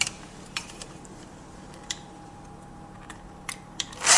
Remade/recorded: remade